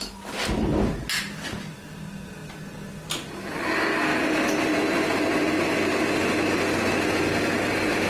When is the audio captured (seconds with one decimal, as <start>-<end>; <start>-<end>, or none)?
0.0-8.1